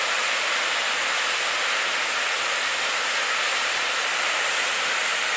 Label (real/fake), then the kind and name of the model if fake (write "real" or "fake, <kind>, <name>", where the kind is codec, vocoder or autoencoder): real